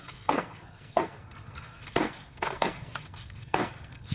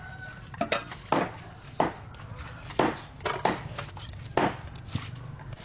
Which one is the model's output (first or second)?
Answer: first